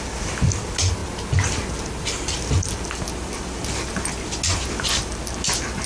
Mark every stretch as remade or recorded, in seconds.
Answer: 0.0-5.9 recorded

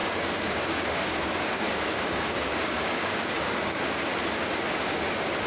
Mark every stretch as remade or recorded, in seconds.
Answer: 0.0-4.1 remade; 4.1-4.7 recorded; 4.7-5.5 remade

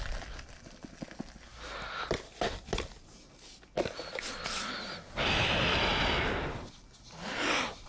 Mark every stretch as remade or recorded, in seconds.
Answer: 0.0-7.9 recorded

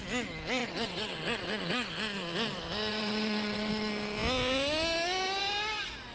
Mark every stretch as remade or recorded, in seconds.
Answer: 0.0-0.6 recorded; 0.6-1.9 remade; 1.9-2.9 recorded; 2.9-3.7 remade; 3.7-6.1 recorded

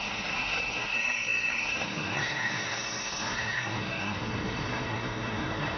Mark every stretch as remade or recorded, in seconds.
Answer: 0.0-5.8 remade

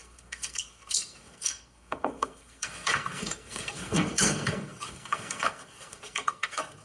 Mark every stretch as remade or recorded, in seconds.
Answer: 0.0-6.8 remade